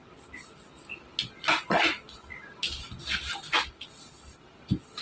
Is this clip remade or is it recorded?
recorded